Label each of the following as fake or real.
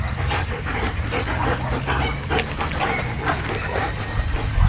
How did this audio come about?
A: real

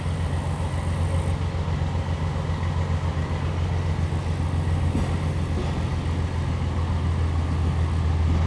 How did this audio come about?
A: real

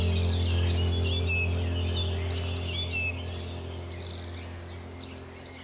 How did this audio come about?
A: real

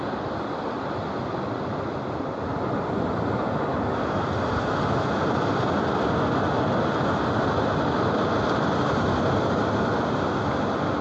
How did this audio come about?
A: real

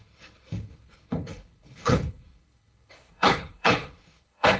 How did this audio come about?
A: fake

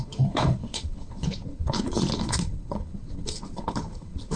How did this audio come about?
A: fake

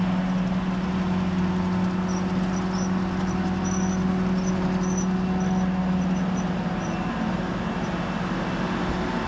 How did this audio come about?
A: real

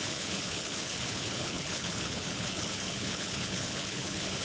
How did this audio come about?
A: fake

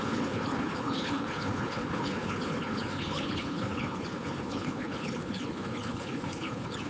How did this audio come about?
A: fake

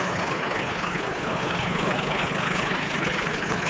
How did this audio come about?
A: fake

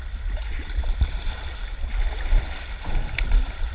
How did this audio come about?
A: real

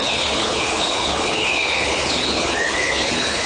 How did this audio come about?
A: fake